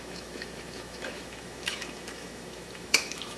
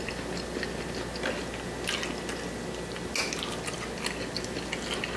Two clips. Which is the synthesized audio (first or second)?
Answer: first